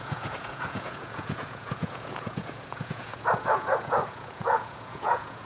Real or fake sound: fake